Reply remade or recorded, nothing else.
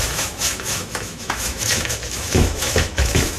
remade